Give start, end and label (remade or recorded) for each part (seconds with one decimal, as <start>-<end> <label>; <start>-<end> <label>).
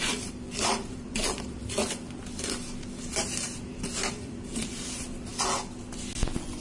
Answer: 0.0-1.6 remade; 1.6-3.0 recorded; 3.0-5.3 remade; 5.3-6.6 recorded